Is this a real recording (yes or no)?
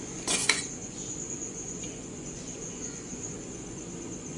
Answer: no